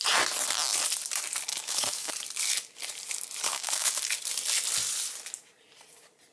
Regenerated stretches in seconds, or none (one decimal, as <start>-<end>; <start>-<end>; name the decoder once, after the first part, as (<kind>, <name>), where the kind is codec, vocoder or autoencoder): 1.5-2.1 (codec, DAC); 3.5-4.1